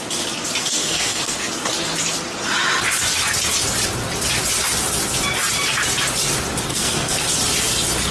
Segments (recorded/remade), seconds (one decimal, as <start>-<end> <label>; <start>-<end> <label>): 0.0-0.6 recorded; 0.6-1.5 remade; 1.5-6.7 recorded; 6.7-7.3 remade; 7.3-8.1 recorded